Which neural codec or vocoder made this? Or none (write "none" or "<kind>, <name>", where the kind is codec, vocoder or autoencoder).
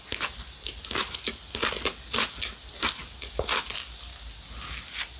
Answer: none